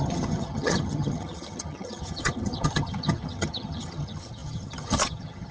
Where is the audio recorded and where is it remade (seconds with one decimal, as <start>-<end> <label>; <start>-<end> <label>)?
0.0-5.5 remade